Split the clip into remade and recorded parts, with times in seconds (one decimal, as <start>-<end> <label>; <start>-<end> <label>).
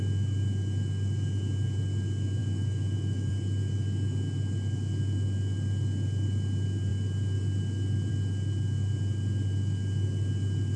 0.0-2.4 recorded; 2.4-3.3 remade; 3.3-10.8 recorded